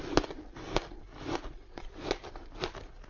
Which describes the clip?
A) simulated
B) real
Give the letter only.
B